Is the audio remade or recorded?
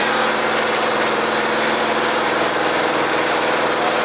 remade